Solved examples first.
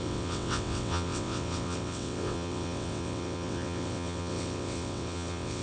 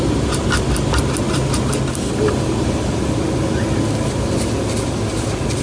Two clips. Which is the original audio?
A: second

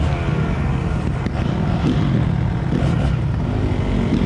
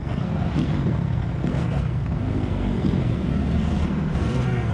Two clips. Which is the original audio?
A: first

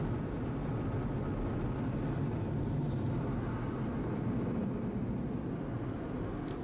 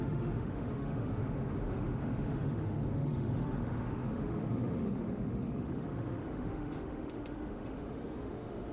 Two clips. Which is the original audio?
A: first